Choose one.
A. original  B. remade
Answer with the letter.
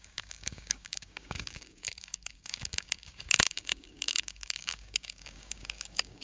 B